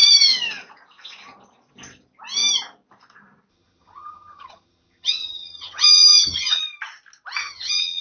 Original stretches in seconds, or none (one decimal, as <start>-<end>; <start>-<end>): 0.0-3.5; 6.6-7.4